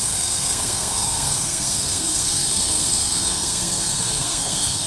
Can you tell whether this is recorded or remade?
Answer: remade